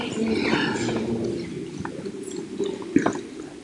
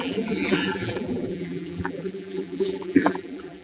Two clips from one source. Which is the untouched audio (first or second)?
first